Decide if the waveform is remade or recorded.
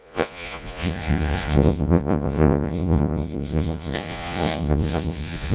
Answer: remade